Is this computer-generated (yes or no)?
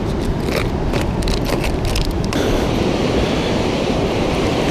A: yes